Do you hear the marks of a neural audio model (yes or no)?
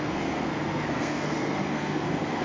yes